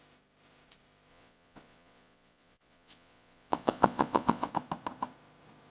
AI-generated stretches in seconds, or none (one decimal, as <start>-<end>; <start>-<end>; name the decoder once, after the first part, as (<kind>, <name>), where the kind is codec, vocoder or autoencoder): 1.1-4.5 (vocoder, Vocos)